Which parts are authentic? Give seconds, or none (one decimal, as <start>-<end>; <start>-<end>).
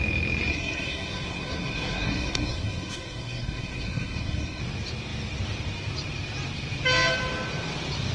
0.0-0.5; 4.6-8.1